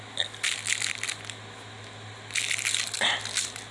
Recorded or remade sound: recorded